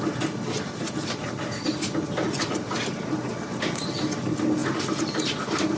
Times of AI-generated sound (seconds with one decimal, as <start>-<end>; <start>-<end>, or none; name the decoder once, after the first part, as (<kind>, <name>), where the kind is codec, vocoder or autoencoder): none